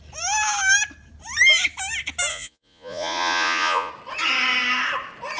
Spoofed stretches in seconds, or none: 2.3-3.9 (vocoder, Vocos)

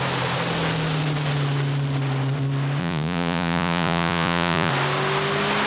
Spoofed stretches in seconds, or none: 2.8-4.7 (vocoder, Vocos)

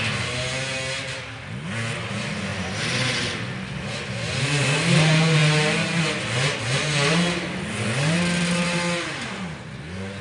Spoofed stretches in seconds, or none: none

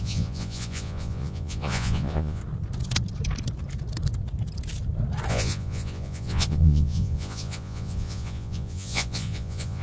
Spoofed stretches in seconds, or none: 0.0-2.4 (vocoder, Vocos); 5.3-9.8